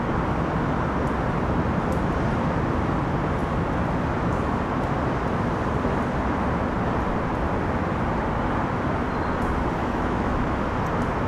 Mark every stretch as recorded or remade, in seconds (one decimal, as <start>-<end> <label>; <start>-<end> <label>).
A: 0.0-9.8 recorded; 9.8-10.6 remade; 10.6-11.3 recorded